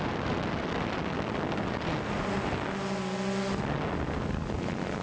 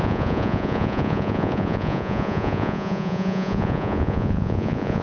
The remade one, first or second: second